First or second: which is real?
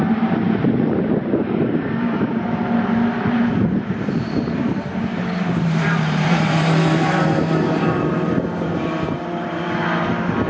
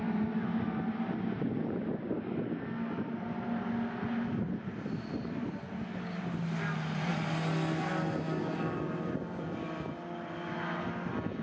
second